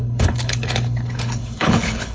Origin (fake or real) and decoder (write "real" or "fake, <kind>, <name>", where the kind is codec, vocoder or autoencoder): fake, codec, HILCodec